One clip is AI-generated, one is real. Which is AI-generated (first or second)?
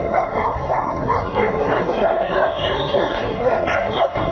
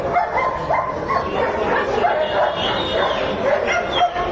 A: first